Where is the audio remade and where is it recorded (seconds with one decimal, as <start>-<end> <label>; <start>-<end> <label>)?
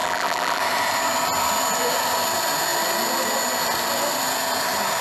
0.0-0.6 remade; 0.6-5.0 recorded